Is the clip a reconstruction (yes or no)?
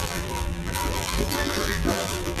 yes